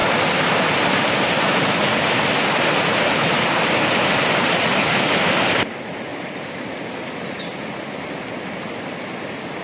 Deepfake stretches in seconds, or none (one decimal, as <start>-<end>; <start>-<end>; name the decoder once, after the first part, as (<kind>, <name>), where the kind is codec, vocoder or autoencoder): 0.0-0.8 (vocoder, BigVGAN v2); 6.1-7.4